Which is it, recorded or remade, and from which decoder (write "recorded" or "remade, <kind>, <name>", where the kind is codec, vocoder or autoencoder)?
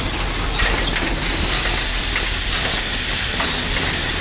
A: remade, vocoder, BigVGAN v2